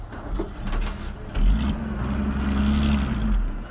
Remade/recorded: recorded